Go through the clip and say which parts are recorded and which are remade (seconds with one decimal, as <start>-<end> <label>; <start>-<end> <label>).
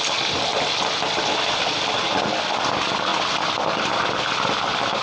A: 0.0-5.0 recorded